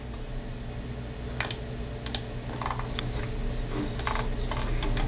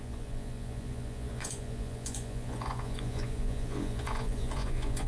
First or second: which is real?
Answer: first